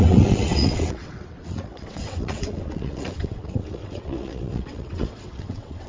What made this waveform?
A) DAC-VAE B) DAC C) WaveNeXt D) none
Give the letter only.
C